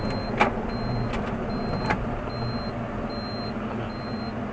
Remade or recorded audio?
recorded